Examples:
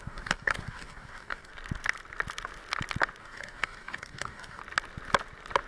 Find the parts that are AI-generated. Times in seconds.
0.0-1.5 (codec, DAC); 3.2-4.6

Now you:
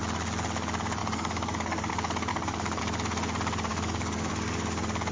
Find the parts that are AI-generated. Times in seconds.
1.0-1.9 (codec, DAC); 2.3-2.8; 3.7-4.3

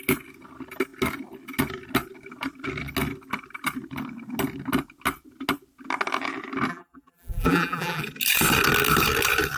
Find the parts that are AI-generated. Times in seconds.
6.7-8.0 (vocoder, BigVGAN v2)